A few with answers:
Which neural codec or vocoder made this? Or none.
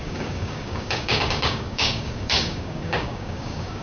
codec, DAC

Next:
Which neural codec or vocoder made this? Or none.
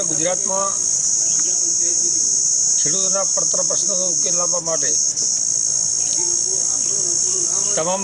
none